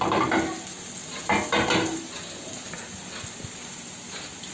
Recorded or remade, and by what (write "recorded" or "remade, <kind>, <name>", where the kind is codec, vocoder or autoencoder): recorded